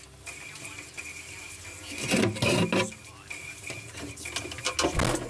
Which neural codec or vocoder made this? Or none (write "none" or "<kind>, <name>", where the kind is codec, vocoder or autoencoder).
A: none